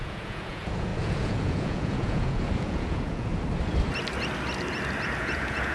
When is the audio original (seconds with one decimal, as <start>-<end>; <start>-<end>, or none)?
3.3-5.2